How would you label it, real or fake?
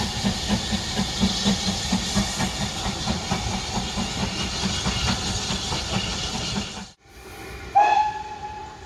real